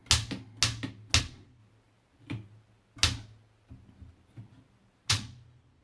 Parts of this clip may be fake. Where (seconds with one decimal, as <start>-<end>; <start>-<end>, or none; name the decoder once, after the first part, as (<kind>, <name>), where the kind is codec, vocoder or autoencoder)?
1.2-1.6 (vocoder, Vocos); 5.1-5.8